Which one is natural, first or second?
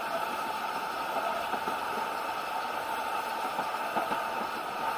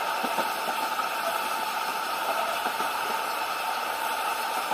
first